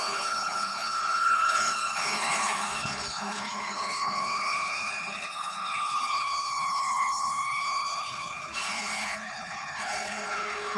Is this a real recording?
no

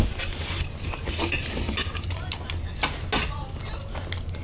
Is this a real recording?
yes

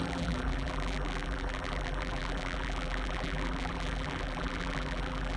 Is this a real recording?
no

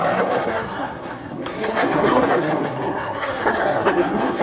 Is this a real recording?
no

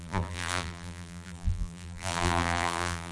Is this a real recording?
no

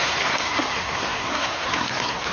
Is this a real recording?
no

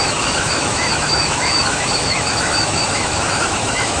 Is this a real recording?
no